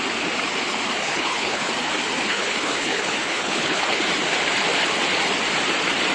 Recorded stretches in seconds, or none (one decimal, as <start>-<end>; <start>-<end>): 0.0-1.0; 1.7-2.3; 4.0-6.1